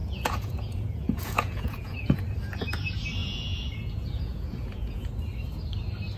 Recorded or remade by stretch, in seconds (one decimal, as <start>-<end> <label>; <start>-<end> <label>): 0.0-2.2 remade; 2.2-3.2 recorded; 3.2-5.1 remade; 5.1-6.2 recorded